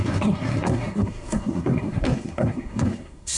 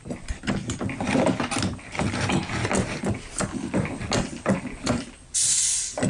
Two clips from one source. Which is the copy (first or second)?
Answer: first